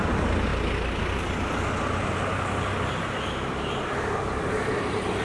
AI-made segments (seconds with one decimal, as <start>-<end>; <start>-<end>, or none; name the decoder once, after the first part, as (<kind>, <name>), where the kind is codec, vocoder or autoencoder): none